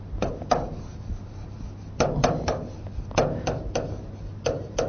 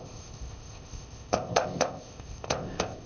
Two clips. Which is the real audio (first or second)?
first